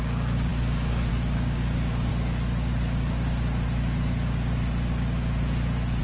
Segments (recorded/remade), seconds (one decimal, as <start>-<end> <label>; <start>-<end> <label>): 0.0-2.1 remade; 2.1-6.0 recorded